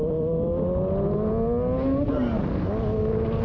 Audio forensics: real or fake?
real